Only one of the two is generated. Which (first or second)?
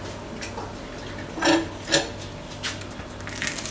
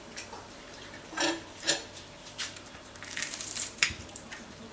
second